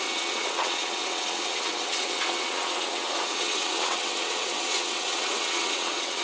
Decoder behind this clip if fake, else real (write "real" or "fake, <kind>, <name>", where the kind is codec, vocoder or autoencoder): fake, vocoder, WaveNeXt